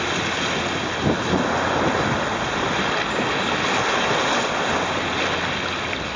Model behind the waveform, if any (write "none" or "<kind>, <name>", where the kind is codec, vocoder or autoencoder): none